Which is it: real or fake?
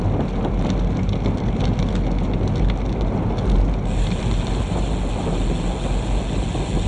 real